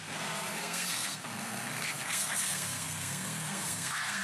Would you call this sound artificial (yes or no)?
yes